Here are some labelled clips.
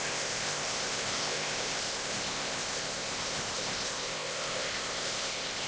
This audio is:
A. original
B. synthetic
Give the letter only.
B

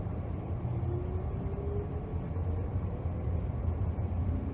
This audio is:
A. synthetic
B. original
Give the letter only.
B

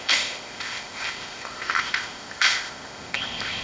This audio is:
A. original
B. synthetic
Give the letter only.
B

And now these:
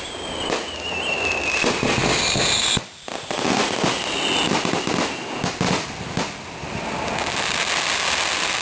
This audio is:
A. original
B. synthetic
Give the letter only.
A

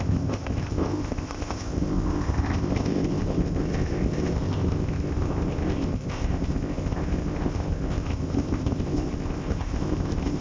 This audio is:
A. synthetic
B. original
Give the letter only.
A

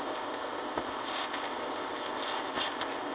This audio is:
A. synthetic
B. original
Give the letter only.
A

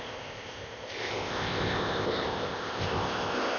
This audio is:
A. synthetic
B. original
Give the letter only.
A